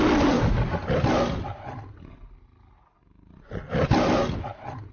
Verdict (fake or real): real